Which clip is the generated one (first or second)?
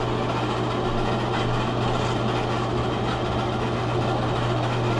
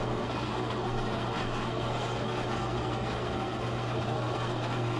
second